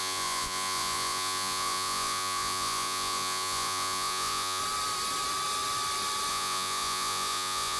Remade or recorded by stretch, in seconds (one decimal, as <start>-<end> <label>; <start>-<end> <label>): 0.0-4.6 remade; 4.6-6.3 recorded; 6.3-7.8 remade